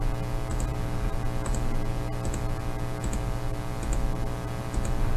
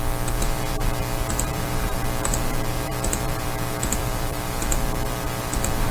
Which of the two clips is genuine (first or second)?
first